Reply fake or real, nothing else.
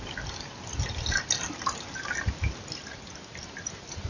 real